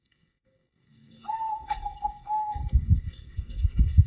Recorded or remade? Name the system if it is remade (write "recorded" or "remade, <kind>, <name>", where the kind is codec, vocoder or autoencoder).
remade, codec, SNAC